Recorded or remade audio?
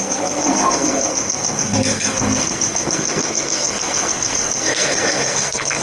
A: remade